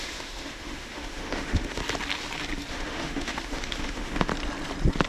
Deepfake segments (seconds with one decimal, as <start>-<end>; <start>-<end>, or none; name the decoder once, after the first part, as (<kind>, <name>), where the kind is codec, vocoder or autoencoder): 0.0-1.8 (autoencoder, DAC-VAE); 2.7-4.3